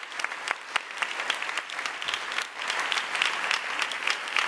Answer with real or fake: real